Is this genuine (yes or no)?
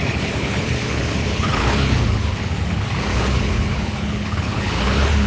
no